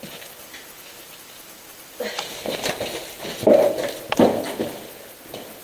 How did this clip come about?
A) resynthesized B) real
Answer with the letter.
B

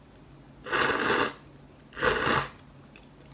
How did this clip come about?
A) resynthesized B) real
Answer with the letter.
B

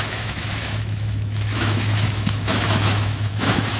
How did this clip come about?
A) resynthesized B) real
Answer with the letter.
A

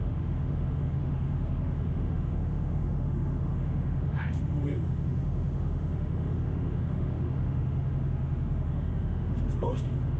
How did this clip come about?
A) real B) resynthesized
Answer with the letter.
B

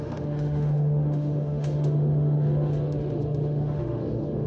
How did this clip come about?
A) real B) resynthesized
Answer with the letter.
B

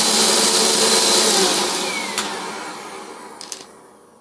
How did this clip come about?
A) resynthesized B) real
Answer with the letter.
B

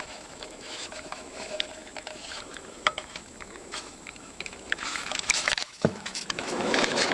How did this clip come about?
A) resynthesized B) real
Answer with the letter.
A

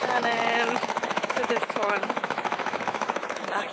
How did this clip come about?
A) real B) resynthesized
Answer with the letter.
B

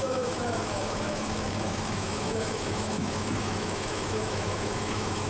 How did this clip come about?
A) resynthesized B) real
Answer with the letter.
A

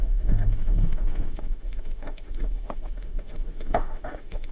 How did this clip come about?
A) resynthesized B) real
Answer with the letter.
A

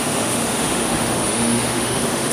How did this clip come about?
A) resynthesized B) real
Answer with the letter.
A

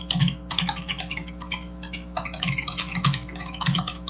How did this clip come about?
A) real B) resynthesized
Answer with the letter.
B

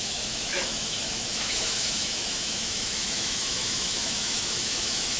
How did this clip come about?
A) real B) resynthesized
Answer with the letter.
B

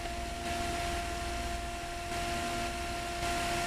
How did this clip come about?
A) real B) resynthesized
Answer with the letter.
A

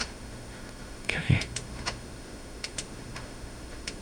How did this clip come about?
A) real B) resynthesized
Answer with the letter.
B